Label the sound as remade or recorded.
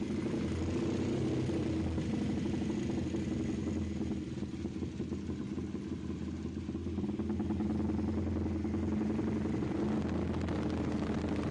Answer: recorded